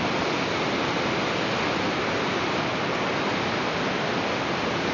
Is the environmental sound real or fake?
real